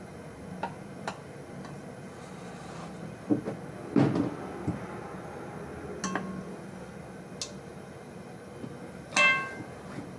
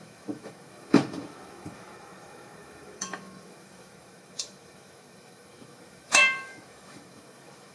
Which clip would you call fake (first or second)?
second